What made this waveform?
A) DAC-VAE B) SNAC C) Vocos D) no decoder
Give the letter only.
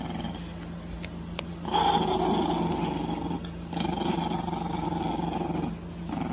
D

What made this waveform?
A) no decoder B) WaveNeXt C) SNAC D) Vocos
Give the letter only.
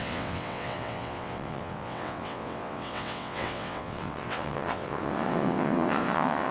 B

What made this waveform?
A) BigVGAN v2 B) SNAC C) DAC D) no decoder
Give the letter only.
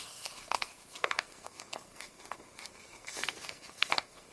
B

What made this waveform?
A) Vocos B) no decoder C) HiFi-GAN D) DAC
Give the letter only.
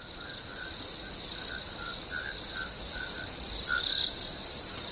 B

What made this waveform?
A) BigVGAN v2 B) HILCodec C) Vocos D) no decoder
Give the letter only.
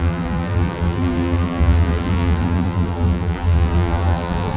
A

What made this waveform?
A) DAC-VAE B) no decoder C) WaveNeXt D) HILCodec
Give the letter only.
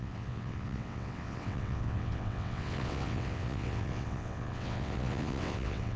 C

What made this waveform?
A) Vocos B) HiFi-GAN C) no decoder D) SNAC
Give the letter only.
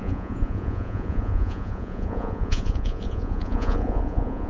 A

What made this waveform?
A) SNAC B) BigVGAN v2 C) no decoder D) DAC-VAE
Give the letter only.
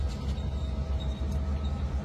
C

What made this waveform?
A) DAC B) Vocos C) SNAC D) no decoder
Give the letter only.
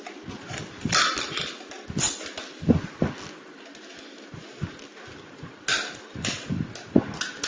D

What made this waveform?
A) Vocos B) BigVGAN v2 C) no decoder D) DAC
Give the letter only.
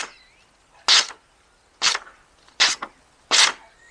C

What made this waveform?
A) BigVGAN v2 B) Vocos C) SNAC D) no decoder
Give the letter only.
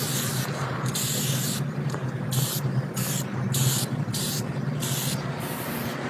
D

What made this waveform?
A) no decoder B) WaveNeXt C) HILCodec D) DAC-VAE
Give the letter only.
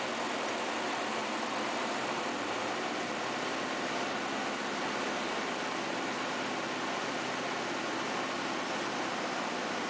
A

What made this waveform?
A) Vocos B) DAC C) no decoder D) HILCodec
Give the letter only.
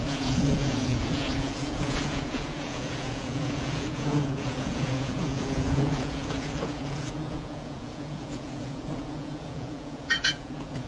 A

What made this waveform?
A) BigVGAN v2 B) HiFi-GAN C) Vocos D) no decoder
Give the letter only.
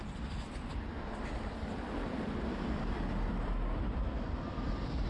A